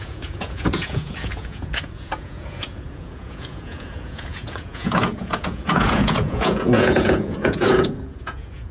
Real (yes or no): no